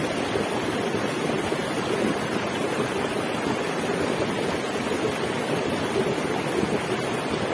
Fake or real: real